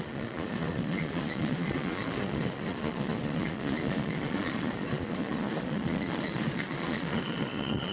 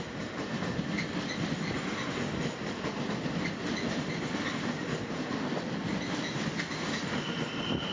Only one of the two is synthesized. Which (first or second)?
first